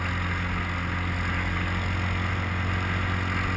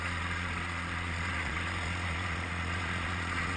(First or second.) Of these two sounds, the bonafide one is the first